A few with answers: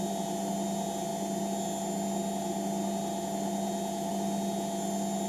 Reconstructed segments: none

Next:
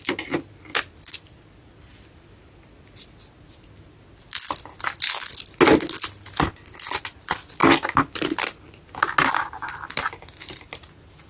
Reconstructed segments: none

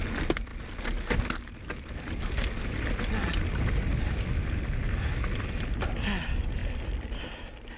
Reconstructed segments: none

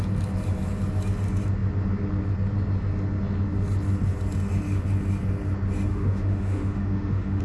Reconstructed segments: 5.9-7.4 (autoencoder, DAC-VAE)

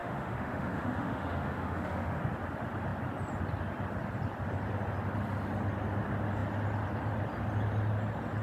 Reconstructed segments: 0.0-2.2 (autoencoder, DAC-VAE)

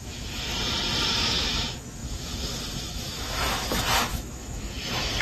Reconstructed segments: 0.0-0.5 (autoencoder, DAC-VAE); 1.1-5.2

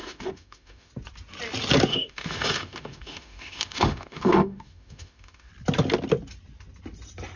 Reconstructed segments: 0.0-0.9 (autoencoder, DAC-VAE); 1.9-5.5

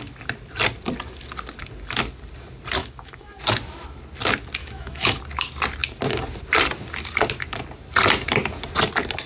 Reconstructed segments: 2.8-3.4 (autoencoder, DAC-VAE); 4.6-5.2